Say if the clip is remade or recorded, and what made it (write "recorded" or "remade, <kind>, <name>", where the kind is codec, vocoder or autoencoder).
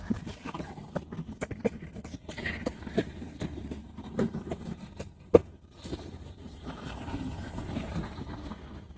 remade, vocoder, BigVGAN v2